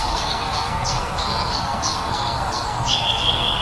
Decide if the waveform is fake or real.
fake